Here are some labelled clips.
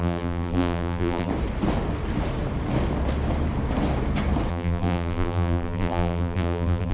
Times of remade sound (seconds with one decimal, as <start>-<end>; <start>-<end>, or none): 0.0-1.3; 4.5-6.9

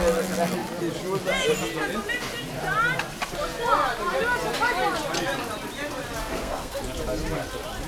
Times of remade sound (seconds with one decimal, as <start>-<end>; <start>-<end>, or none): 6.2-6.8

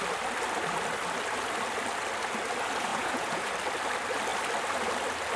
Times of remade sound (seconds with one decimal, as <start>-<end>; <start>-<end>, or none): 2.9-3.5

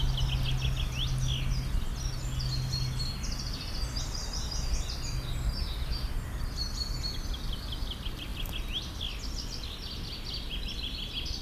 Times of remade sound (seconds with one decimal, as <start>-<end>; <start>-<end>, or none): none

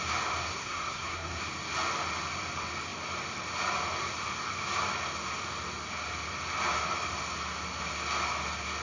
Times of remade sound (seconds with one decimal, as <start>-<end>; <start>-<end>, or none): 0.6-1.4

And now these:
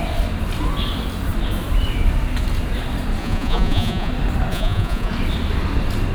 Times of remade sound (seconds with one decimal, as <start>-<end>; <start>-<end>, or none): 3.2-4.1; 4.5-5.1

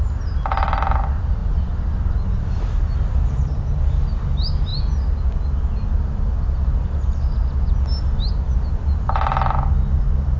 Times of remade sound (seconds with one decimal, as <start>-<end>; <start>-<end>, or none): none

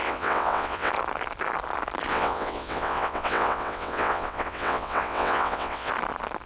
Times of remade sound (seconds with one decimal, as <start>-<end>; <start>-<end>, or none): 0.0-0.9; 2.1-5.9